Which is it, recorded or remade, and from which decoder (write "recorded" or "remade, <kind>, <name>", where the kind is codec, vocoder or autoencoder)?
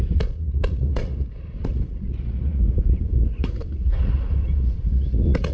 remade, vocoder, Vocos